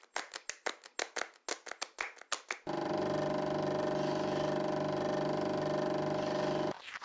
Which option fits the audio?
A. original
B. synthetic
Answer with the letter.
A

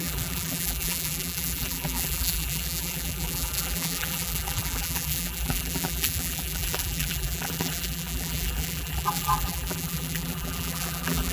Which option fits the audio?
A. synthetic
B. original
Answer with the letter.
A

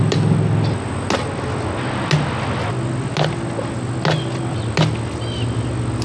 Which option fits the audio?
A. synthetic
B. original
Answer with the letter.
B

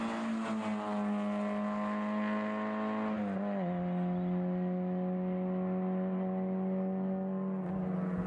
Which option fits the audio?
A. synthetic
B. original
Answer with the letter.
B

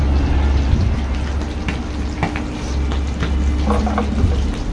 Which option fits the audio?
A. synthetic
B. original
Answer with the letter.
B